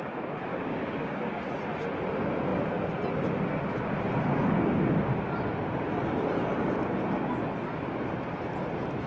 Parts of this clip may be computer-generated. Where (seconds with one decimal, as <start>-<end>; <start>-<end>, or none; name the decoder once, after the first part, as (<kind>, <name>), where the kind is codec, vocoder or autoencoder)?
0.5-1.4 (codec, DAC)